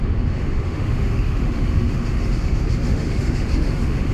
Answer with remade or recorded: remade